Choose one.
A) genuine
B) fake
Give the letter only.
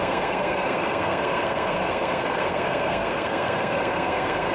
B